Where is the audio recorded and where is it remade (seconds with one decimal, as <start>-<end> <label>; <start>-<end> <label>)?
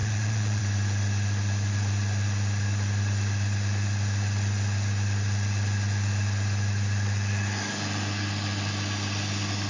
0.0-0.6 remade; 0.6-9.7 recorded